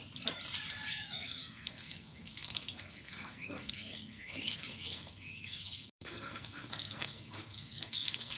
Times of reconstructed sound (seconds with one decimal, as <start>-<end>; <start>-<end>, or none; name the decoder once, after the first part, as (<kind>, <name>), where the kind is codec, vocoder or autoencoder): 0.9-8.4 (codec, SNAC)